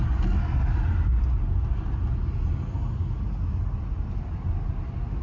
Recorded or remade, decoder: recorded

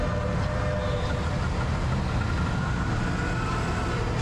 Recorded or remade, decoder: recorded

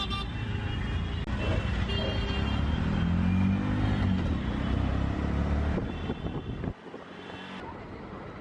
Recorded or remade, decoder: recorded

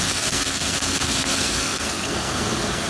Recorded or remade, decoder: remade, codec, SNAC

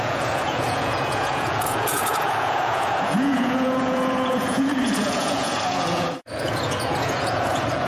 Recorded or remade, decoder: remade, vocoder, Vocos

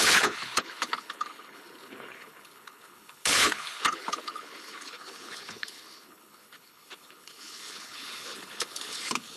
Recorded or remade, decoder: remade, codec, HILCodec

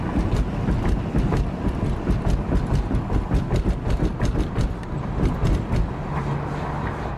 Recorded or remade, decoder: recorded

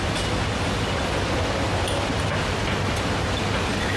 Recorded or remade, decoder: recorded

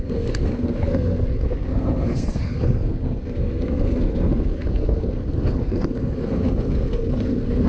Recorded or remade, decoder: remade, codec, SNAC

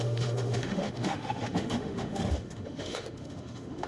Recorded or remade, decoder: remade, autoencoder, DAC-VAE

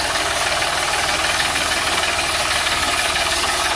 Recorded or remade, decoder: remade, codec, DAC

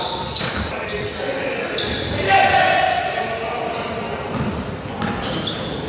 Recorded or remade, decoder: recorded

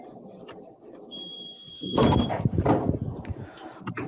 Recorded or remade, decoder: remade, vocoder, BigVGAN v2